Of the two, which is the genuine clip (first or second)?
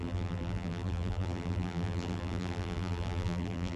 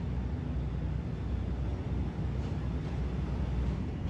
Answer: second